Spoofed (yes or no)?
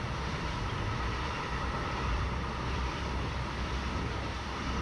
yes